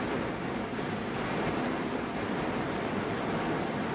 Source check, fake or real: real